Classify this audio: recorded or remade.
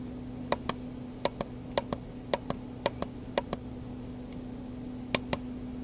recorded